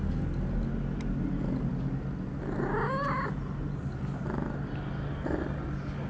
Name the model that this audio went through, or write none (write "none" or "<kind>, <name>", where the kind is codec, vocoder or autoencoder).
none